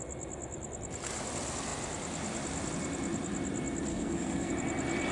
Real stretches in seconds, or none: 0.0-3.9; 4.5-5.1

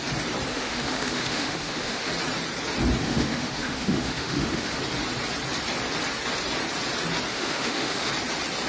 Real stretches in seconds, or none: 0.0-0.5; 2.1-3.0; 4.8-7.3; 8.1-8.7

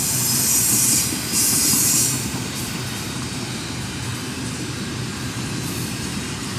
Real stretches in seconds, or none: 0.0-0.7; 2.7-6.6